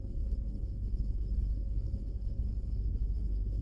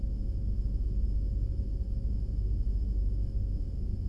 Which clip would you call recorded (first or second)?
second